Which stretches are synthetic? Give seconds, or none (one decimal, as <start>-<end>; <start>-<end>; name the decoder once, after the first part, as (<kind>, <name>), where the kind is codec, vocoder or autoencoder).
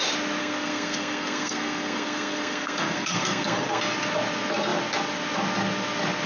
0.4-3.8 (codec, SNAC)